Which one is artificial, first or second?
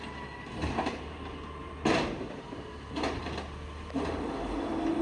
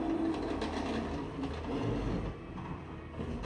first